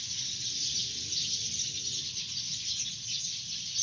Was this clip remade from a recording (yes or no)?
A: no